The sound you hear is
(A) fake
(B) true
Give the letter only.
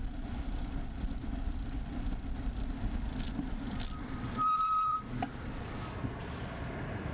A